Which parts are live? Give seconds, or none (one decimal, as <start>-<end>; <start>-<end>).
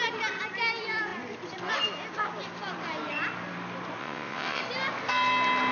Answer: 0.0-4.0; 4.6-5.7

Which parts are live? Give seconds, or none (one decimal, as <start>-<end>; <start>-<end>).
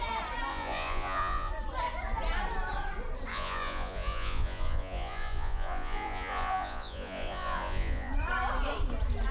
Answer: 0.0-0.5; 1.5-3.3; 8.1-9.3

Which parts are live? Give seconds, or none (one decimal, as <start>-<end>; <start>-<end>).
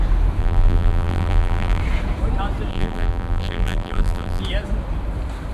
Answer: 0.0-0.4; 1.8-2.7; 4.4-5.5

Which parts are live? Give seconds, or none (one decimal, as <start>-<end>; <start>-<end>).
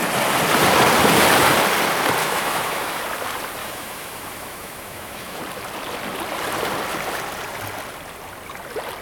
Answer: 0.0-2.2; 3.0-3.6; 5.4-9.0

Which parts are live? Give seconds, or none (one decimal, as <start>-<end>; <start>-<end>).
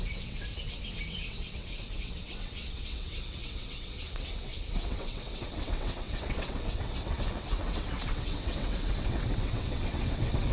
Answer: none